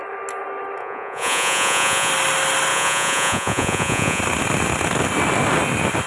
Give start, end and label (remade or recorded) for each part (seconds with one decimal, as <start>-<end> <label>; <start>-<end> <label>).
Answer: 0.0-0.8 recorded; 0.8-2.1 remade; 2.1-2.7 recorded; 2.7-4.2 remade; 4.2-6.1 recorded

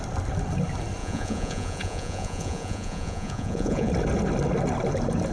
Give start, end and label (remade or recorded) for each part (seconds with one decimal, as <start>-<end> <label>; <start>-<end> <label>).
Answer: 0.0-1.0 recorded; 1.0-3.9 remade; 3.9-5.3 recorded